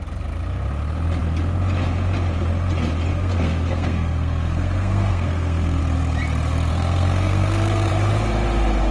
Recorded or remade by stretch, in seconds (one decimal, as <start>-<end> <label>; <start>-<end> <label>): 0.0-3.1 recorded; 3.1-5.8 remade; 5.8-6.7 recorded; 6.7-7.9 remade; 7.9-8.9 recorded